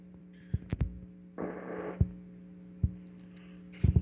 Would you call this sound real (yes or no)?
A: yes